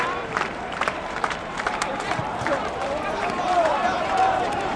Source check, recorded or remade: remade